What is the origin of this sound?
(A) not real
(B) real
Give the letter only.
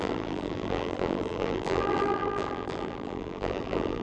A